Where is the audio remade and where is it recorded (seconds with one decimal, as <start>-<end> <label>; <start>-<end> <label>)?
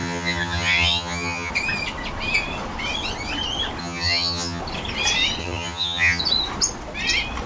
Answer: 0.0-1.5 remade; 1.5-3.8 recorded; 3.8-4.6 remade; 4.6-5.4 recorded; 5.4-6.2 remade; 6.2-7.5 recorded